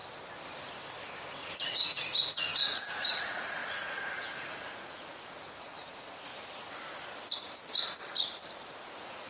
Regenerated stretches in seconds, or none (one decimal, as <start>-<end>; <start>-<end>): 1.4-6.3; 8.8-9.3